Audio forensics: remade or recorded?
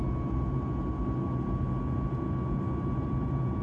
recorded